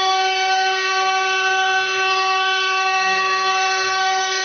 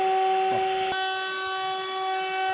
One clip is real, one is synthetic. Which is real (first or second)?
second